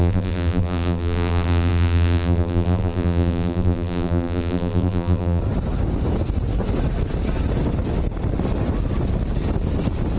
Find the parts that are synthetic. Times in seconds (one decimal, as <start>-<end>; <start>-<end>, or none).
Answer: 0.0-5.4